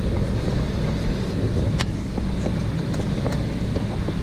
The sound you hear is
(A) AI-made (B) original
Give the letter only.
B